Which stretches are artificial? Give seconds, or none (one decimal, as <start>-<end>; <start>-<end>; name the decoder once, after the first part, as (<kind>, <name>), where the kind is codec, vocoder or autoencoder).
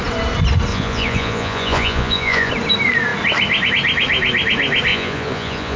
0.7-2.5 (vocoder, Vocos); 4.9-5.8